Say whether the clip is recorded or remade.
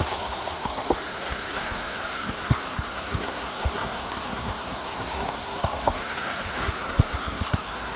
remade